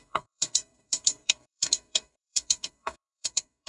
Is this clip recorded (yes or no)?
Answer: no